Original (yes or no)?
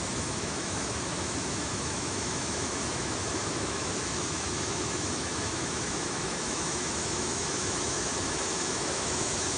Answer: no